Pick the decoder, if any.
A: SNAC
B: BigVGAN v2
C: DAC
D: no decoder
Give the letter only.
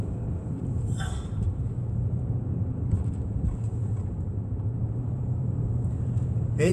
B